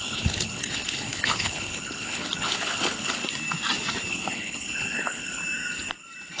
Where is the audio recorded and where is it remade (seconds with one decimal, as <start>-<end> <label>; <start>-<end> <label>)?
0.0-3.2 remade; 3.2-4.1 recorded; 4.1-5.4 remade; 5.4-6.4 recorded